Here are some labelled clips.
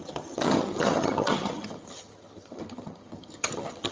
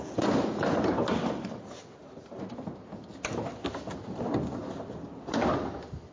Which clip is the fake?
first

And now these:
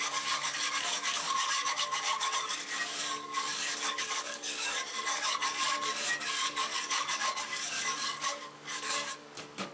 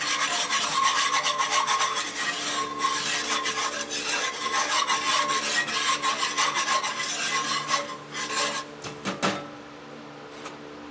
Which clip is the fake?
first